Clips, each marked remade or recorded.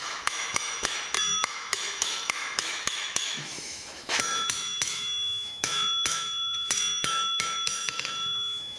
remade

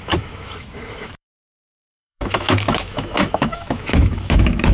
remade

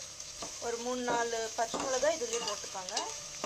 remade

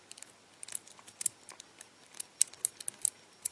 recorded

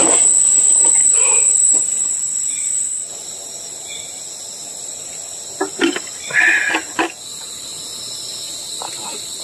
recorded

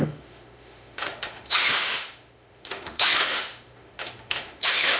remade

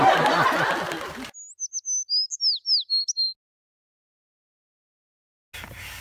recorded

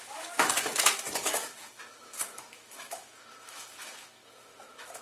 remade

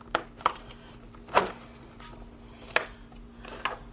recorded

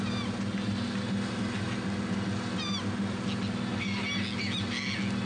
recorded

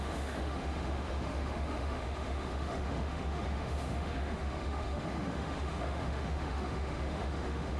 remade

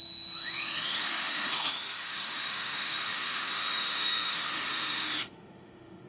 remade